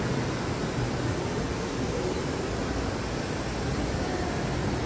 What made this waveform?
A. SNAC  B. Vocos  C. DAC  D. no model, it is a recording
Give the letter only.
D